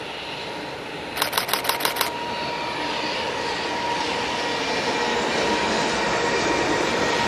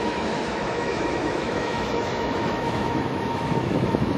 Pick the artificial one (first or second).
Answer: second